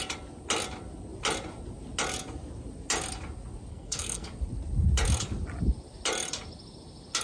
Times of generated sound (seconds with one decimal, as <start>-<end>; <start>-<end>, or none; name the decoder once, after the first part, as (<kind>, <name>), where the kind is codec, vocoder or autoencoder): 3.7-4.3 (codec, SNAC)

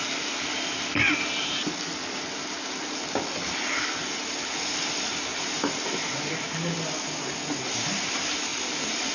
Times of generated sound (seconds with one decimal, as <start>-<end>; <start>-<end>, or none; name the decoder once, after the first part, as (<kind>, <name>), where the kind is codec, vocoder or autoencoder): none

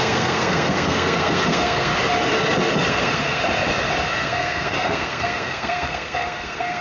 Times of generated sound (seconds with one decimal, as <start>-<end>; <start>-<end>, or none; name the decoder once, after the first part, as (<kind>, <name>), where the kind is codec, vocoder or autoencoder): 0.0-1.9 (codec, SNAC); 2.9-3.4; 4.1-6.8

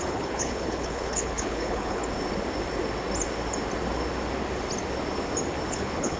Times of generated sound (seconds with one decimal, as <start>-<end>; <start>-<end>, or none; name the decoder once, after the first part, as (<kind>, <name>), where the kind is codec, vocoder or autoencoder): 0.0-2.0 (codec, HILCodec); 5.7-6.2

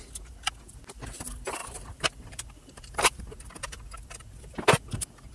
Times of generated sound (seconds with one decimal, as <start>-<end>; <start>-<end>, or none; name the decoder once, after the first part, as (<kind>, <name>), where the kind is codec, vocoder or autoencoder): 1.6-3.2 (vocoder, BigVGAN v2)

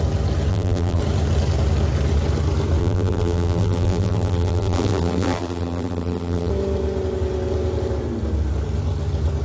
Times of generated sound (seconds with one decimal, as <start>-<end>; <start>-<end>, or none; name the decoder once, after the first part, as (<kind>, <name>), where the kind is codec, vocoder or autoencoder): 0.5-1.0 (vocoder, BigVGAN v2); 2.8-6.5

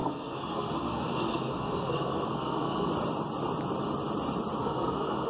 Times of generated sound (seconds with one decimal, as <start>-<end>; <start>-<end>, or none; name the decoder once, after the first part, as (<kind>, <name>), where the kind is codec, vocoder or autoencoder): 0.0-2.9 (codec, SNAC); 4.6-5.3

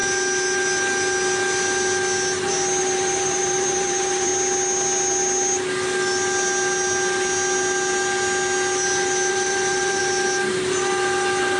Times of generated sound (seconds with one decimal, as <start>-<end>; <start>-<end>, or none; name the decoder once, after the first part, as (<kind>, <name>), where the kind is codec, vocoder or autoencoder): 2.8-4.3 (vocoder, BigVGAN v2); 9.3-10.0